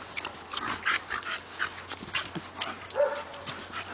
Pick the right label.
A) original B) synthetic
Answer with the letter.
A